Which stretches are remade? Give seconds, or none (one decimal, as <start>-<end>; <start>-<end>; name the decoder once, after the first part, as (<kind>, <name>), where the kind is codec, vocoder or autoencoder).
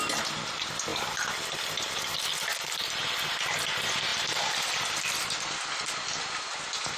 0.9-1.9 (vocoder, BigVGAN v2); 2.5-3.0; 4.1-6.2